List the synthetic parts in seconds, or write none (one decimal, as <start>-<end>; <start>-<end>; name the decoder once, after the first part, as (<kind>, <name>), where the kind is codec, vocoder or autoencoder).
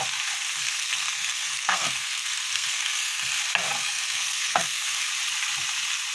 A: 0.6-3.4 (codec, SNAC); 3.8-5.1